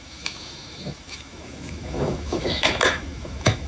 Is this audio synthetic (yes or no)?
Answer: yes